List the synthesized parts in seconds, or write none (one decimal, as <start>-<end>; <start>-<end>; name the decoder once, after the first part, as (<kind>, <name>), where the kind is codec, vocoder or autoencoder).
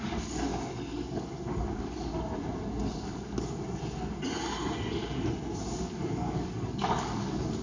0.0-0.5 (codec, DAC); 1.1-2.1; 3.0-3.6; 5.8-7.6